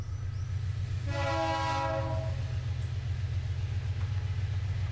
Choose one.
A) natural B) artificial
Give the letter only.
A